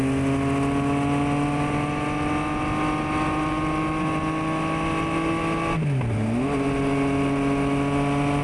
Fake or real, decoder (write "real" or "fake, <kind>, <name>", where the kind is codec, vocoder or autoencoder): real